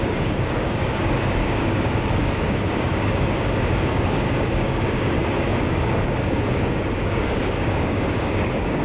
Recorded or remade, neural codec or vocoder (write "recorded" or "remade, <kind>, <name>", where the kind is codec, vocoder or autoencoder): remade, codec, DAC